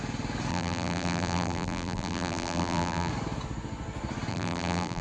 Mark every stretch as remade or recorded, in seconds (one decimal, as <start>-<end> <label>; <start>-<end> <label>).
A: 0.0-0.5 recorded; 0.5-3.1 remade; 3.1-4.3 recorded; 4.3-5.0 remade

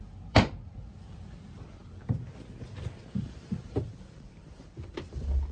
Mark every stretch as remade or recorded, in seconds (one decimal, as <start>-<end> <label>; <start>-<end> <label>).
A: 0.0-1.8 remade; 1.8-3.1 recorded; 3.1-5.5 remade

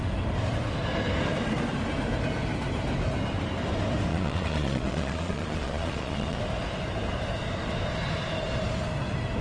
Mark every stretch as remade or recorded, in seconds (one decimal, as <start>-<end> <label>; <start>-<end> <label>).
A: 0.0-4.1 recorded; 4.1-6.4 remade; 6.4-9.4 recorded

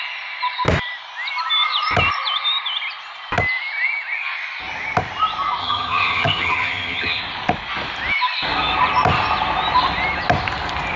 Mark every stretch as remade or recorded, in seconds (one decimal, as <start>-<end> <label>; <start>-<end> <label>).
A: 0.0-5.6 recorded; 5.6-7.2 remade; 7.2-11.0 recorded

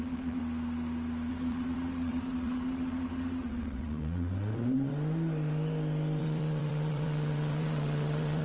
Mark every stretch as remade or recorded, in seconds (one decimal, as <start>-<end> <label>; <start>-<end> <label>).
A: 0.0-0.4 remade; 0.4-1.3 recorded; 1.3-4.9 remade; 4.9-6.2 recorded; 6.2-8.4 remade

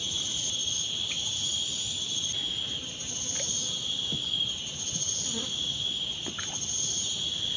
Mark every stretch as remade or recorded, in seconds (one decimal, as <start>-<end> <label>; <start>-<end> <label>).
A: 0.0-7.6 recorded